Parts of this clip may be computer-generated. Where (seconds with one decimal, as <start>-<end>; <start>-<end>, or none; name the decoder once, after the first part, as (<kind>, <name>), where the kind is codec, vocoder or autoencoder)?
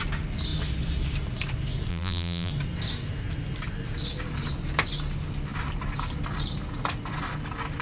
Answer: 1.9-2.5 (vocoder, BigVGAN v2)